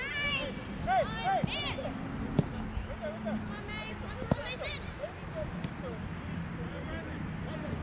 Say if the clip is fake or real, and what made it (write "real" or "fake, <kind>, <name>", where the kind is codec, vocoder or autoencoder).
real